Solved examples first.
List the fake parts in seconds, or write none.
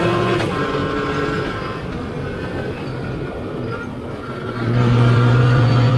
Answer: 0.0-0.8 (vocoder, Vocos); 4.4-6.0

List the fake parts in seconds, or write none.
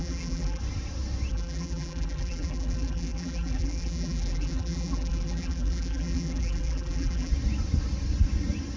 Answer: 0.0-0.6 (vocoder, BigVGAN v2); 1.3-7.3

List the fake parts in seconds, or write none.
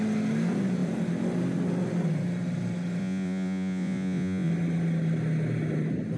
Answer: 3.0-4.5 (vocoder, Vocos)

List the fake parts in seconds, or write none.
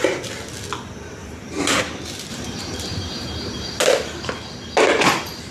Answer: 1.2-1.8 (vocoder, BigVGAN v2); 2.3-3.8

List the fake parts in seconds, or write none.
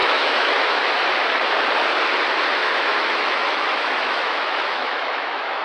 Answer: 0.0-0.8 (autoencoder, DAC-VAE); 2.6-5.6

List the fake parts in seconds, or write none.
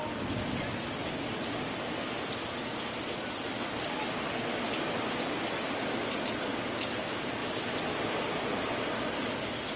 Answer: none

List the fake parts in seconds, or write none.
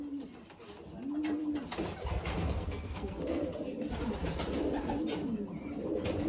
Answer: 2.3-3.4 (codec, SNAC)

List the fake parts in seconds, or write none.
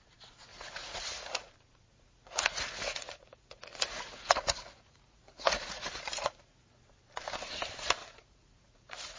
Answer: 0.5-1.5 (vocoder, Vocos); 1.9-6.6; 8.0-9.2